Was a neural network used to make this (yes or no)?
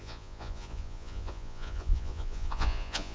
yes